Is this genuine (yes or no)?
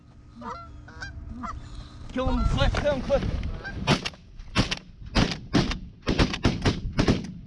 yes